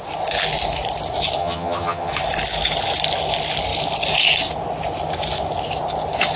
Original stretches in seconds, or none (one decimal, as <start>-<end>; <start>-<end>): 0.0-1.4; 2.1-6.4